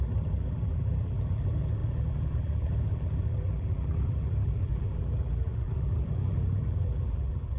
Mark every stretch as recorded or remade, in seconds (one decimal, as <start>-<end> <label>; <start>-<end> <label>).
0.0-7.6 remade